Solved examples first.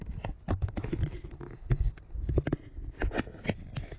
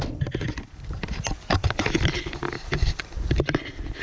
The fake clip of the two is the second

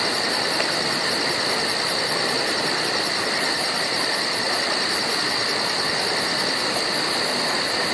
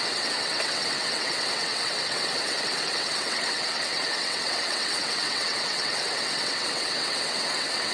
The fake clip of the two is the second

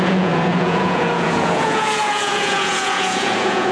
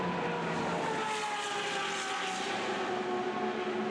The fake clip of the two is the first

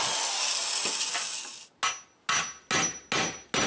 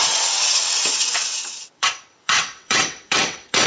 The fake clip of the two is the second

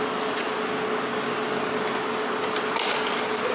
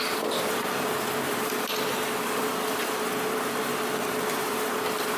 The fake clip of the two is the second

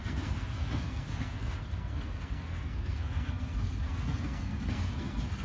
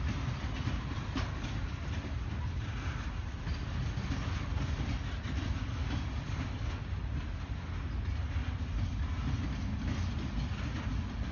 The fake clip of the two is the first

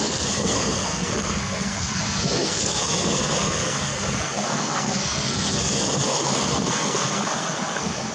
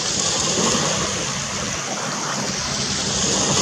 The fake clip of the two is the first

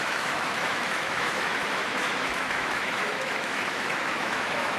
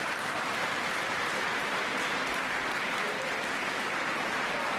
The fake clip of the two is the first